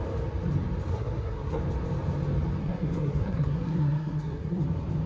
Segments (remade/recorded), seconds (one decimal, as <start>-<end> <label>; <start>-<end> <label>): 0.0-0.9 recorded; 0.9-1.6 remade; 1.6-2.6 recorded; 2.6-4.6 remade; 4.6-5.1 recorded